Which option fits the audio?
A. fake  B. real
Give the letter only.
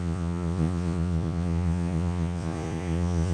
A